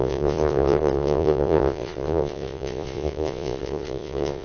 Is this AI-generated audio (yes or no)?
yes